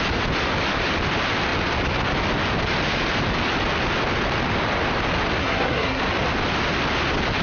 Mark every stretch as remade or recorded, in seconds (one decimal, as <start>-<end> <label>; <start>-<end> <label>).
0.0-5.4 recorded; 5.4-6.0 remade; 6.0-7.4 recorded